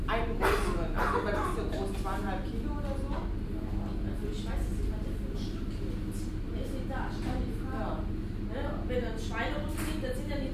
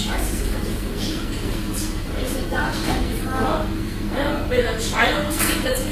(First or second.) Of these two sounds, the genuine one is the first